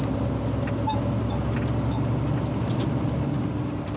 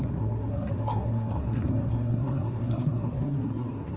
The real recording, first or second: first